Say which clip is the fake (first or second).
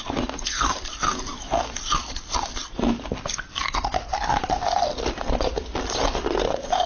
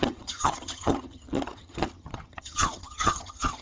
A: second